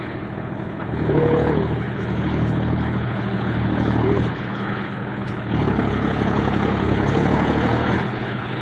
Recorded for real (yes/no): no